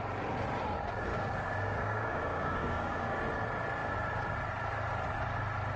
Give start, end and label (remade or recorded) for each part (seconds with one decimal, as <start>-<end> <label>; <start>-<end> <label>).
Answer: 0.0-1.1 recorded; 1.1-3.1 remade; 3.1-5.8 recorded